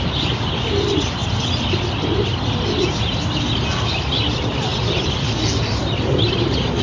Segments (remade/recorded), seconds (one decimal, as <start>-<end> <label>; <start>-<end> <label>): 0.0-6.8 recorded